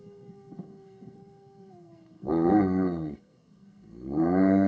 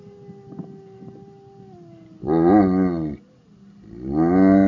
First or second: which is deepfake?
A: first